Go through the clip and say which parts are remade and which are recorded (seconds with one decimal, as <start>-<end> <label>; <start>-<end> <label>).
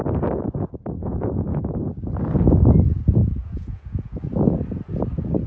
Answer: 0.0-1.0 recorded; 1.0-1.8 remade; 1.8-3.2 recorded; 3.2-4.2 remade; 4.2-5.5 recorded